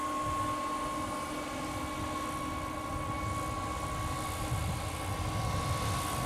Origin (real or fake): real